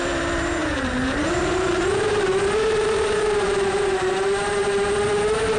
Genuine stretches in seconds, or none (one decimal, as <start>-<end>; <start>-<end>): 4.6-5.6